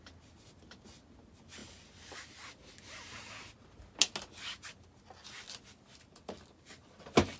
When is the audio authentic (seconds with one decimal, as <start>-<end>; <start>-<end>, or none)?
0.0-7.4